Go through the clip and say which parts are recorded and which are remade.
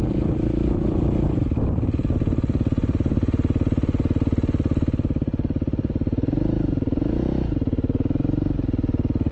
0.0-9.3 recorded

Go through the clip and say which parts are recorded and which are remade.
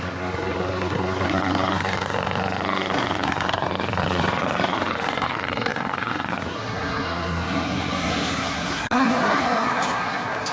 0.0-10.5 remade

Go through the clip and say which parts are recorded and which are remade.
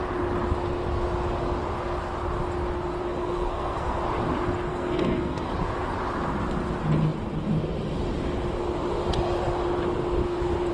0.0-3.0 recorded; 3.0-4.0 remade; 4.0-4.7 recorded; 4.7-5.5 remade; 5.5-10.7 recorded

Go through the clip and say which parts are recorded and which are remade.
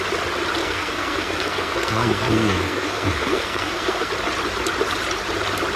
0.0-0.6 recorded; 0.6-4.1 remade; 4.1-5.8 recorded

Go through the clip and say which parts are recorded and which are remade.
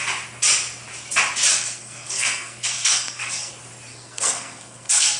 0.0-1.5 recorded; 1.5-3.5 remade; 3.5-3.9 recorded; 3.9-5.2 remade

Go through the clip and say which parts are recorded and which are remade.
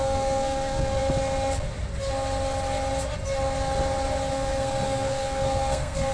0.0-1.0 remade; 1.0-4.3 recorded; 4.3-6.1 remade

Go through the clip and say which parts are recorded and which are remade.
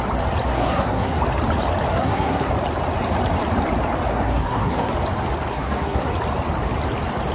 0.0-0.5 recorded; 0.5-1.2 remade; 1.2-1.9 recorded; 1.9-2.5 remade; 2.5-4.1 recorded; 4.1-4.9 remade; 4.9-5.5 recorded; 5.5-6.1 remade; 6.1-7.3 recorded